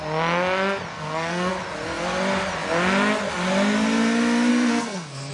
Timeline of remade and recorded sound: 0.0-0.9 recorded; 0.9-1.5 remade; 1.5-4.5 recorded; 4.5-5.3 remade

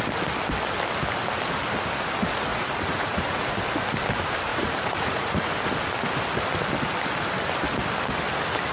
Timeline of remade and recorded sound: 0.0-2.5 recorded; 2.5-3.4 remade; 3.4-4.5 recorded; 4.5-5.5 remade; 5.5-8.7 recorded

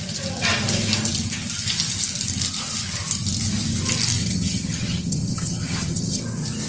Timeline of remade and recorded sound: 0.0-4.2 recorded; 4.2-6.2 remade; 6.2-6.7 recorded